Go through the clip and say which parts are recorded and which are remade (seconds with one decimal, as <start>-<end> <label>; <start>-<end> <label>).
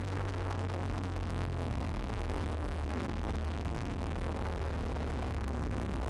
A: 0.0-4.7 remade; 4.7-5.3 recorded; 5.3-6.1 remade